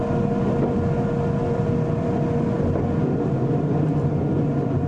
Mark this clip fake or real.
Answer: real